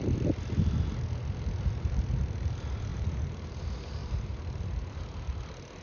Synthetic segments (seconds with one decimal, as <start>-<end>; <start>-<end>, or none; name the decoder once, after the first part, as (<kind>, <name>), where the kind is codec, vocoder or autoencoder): 2.9-3.6 (vocoder, BigVGAN v2); 4.0-5.0